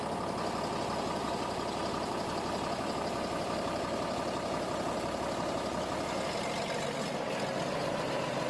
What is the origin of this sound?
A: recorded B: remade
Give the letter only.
A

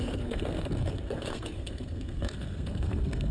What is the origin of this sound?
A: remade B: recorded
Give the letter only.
A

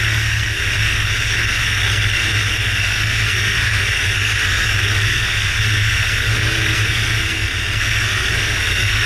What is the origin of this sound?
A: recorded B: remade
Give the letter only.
B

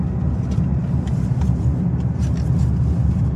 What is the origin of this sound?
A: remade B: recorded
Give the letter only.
B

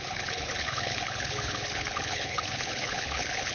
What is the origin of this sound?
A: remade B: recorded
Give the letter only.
A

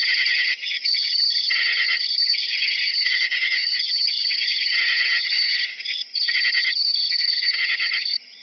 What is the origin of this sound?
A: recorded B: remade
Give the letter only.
B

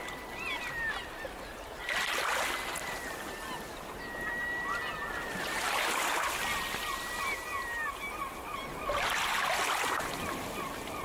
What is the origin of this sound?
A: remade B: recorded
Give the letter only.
B